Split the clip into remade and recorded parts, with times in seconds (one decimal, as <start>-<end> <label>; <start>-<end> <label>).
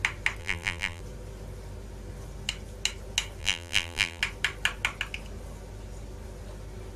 0.0-0.4 recorded; 0.4-1.0 remade; 1.0-3.4 recorded; 3.4-4.2 remade; 4.2-7.0 recorded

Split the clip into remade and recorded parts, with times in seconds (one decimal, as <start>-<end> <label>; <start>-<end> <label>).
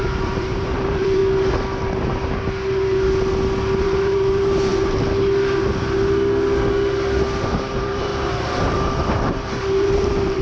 0.0-1.2 remade; 1.2-3.8 recorded; 3.8-4.7 remade; 4.7-7.5 recorded; 7.5-10.4 remade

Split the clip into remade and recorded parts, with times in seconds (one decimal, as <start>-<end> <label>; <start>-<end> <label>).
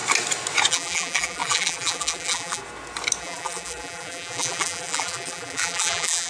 0.0-0.7 recorded; 0.7-2.6 remade; 2.6-3.2 recorded; 3.2-6.3 remade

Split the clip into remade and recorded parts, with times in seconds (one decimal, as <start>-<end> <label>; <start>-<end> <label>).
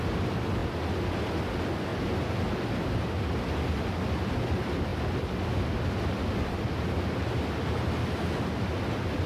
0.0-9.3 recorded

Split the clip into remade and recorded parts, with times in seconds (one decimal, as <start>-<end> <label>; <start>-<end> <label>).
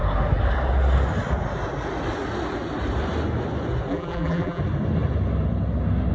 0.0-3.9 recorded; 3.9-4.6 remade; 4.6-6.1 recorded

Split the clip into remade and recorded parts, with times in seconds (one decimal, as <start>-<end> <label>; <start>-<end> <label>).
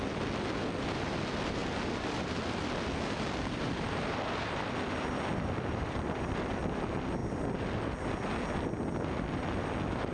0.0-1.6 recorded; 1.6-6.6 remade; 6.6-10.1 recorded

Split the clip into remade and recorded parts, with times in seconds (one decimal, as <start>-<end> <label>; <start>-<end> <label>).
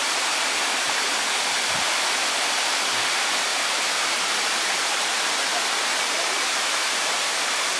0.0-7.8 remade